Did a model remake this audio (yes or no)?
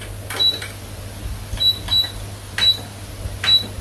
no